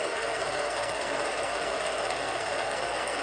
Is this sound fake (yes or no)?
yes